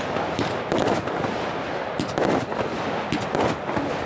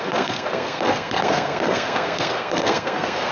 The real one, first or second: first